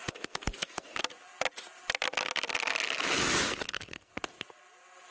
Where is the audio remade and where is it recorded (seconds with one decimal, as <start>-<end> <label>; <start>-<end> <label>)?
0.0-1.0 remade; 1.0-3.4 recorded; 3.4-4.1 remade; 4.1-5.1 recorded